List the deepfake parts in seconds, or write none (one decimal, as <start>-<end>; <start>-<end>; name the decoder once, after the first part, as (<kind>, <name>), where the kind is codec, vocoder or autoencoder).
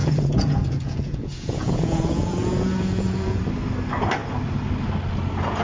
0.0-3.4 (vocoder, Vocos)